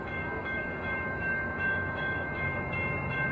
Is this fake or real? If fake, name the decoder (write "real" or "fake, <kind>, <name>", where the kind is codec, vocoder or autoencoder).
fake, autoencoder, DAC-VAE